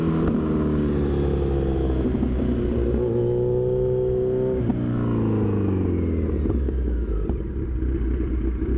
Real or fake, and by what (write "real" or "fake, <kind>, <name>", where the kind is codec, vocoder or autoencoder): real